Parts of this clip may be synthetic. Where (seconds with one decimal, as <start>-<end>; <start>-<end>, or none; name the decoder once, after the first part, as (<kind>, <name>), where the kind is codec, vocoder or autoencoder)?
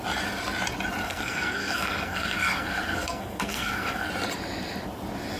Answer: 1.0-4.1 (codec, SNAC)